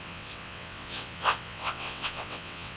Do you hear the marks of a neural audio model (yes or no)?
yes